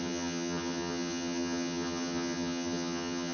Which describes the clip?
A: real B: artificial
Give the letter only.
B